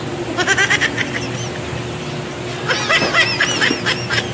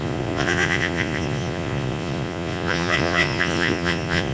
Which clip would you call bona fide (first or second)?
first